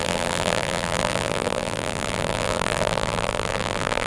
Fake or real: fake